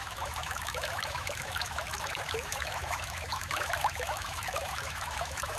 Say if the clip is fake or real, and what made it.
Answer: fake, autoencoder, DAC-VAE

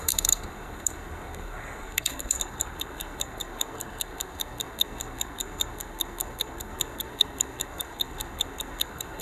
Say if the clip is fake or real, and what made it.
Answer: fake, codec, SNAC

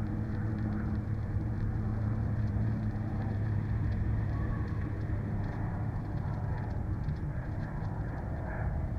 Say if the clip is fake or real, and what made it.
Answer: fake, vocoder, BigVGAN v2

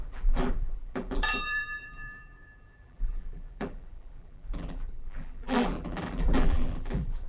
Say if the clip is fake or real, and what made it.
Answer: fake, vocoder, BigVGAN v2